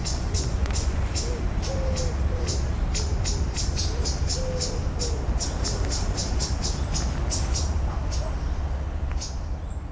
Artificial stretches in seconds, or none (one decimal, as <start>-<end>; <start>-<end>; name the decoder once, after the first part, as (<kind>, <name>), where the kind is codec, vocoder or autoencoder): 0.0-1.1 (vocoder, Vocos)